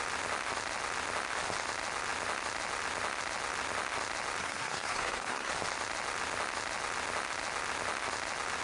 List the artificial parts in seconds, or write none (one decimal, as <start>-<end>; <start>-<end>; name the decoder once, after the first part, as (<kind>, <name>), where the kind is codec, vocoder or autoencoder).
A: 4.4-5.5 (codec, SNAC)